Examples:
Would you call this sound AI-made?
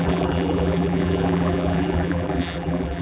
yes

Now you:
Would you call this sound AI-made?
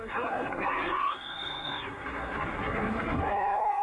yes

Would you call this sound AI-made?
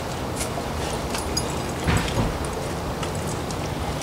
no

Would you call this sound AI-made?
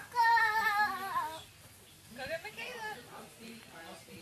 no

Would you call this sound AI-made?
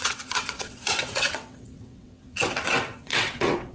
yes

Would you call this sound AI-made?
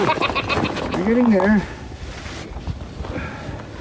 no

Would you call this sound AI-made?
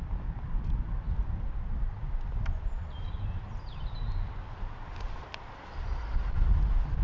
no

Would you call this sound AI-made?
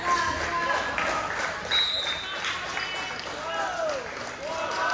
no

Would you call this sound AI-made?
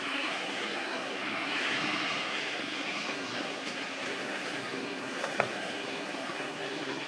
yes